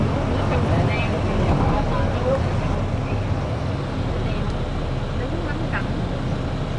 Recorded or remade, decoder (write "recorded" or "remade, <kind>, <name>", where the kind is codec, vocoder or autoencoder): recorded